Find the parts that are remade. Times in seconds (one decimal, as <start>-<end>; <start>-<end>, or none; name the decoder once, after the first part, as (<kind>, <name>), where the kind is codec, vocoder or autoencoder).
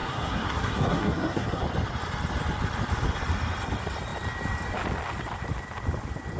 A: 0.0-1.6 (codec, SNAC)